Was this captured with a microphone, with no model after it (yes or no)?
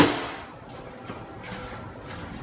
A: yes